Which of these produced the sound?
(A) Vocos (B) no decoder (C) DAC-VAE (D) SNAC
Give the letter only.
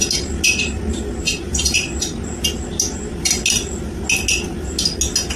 B